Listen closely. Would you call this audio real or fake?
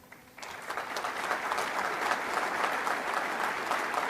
real